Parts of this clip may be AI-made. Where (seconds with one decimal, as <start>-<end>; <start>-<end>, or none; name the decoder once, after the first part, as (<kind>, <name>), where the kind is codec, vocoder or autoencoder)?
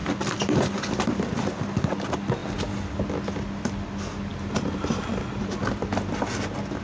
0.0-1.3 (vocoder, BigVGAN v2); 4.3-5.6